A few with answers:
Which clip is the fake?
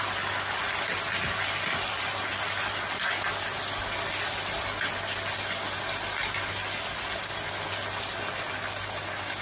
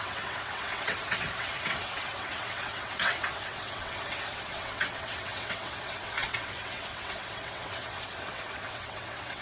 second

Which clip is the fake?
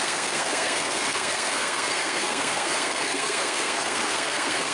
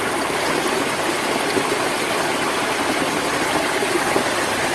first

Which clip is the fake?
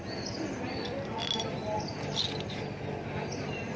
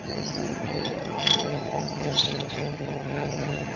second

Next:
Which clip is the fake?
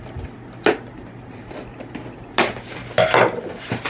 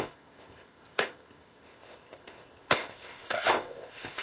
second